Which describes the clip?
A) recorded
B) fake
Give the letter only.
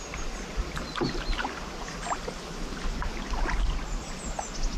A